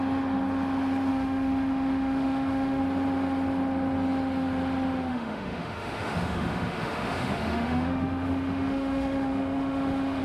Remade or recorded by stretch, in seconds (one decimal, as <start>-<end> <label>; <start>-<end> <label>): 0.0-1.1 recorded; 1.1-2.8 remade; 2.8-5.1 recorded; 5.1-10.2 remade